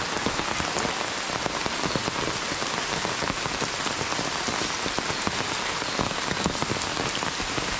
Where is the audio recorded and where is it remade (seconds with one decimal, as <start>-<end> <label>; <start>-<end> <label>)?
0.0-7.8 recorded